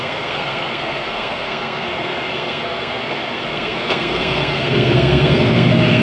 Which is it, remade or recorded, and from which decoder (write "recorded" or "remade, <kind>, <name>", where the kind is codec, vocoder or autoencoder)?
remade, codec, SNAC